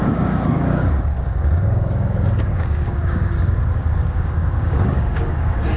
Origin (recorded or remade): remade